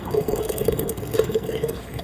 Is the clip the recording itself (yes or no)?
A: no